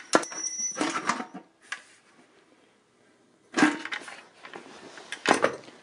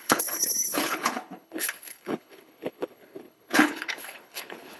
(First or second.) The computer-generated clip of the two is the second